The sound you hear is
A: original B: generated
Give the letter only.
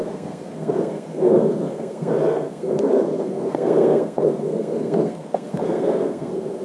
B